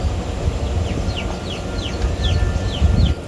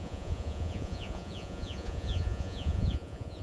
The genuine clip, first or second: first